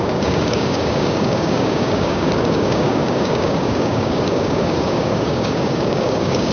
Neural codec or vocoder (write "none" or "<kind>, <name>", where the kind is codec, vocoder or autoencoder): codec, DAC